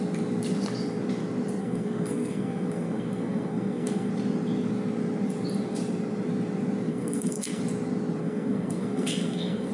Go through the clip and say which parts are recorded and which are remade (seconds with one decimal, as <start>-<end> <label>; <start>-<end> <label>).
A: 0.0-1.6 recorded; 1.6-4.1 remade; 4.1-6.9 recorded; 6.9-7.6 remade; 7.6-8.2 recorded; 8.2-9.7 remade